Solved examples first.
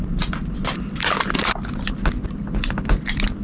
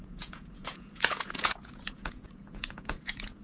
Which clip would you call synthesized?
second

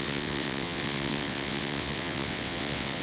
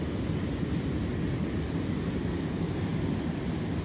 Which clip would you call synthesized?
first